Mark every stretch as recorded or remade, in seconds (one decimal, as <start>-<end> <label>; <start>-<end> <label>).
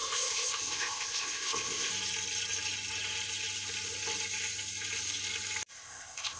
0.0-1.9 remade; 1.9-5.7 recorded; 5.7-6.4 remade